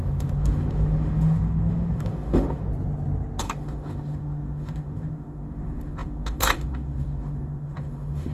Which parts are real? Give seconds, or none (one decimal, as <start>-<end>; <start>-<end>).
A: 2.7-3.4